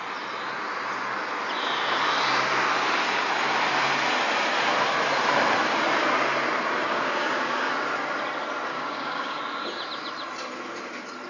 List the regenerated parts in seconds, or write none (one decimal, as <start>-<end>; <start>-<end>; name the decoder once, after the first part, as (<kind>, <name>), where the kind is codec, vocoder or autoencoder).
6.8-7.7 (codec, DAC); 8.7-9.4